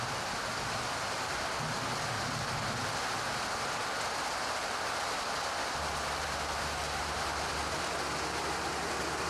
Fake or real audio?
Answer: real